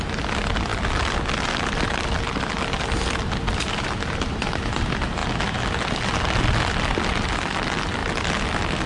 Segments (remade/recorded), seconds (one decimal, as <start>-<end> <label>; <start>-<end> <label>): 0.0-8.9 recorded